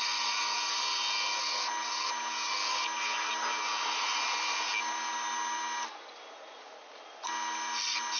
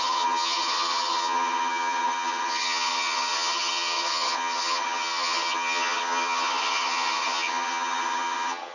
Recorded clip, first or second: first